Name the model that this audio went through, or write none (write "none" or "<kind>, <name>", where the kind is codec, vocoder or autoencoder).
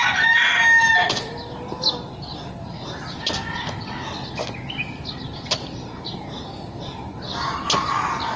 none